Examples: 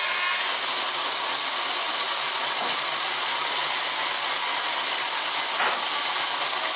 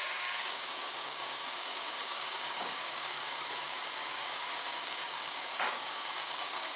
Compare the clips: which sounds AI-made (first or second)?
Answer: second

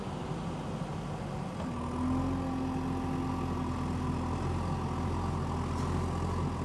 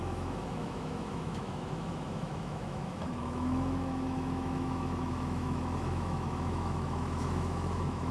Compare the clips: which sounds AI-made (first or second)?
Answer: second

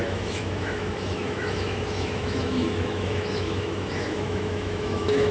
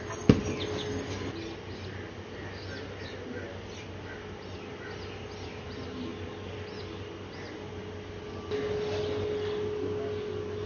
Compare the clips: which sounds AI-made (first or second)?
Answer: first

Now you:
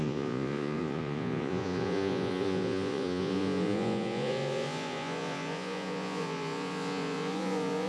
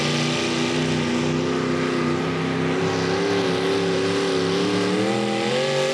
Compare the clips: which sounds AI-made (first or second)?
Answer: first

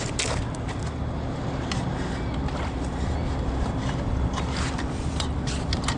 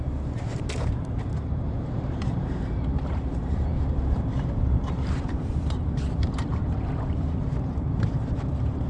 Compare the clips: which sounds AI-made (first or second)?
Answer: second